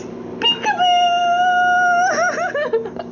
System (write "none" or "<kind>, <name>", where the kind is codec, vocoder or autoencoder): none